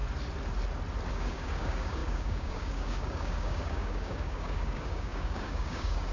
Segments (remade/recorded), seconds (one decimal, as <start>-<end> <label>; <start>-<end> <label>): 0.0-1.1 recorded; 1.1-6.1 remade